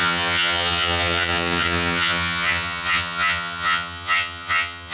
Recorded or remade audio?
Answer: remade